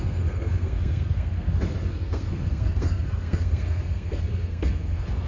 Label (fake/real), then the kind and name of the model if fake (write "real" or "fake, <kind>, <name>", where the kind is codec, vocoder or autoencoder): fake, codec, SNAC